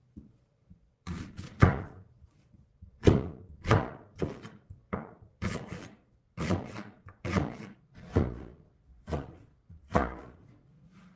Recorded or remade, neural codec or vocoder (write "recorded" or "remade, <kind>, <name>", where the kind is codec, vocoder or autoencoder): remade, vocoder, Vocos